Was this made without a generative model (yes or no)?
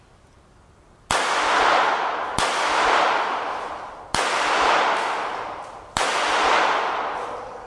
yes